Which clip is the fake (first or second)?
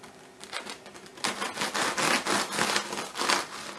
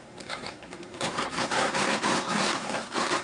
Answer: second